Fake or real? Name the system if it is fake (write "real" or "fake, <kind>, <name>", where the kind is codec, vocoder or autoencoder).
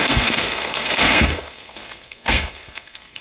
fake, codec, SNAC